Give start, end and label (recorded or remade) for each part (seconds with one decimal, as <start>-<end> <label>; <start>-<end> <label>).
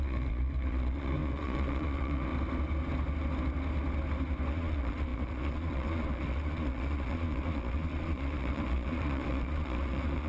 0.0-2.3 remade; 2.3-4.5 recorded; 4.5-10.3 remade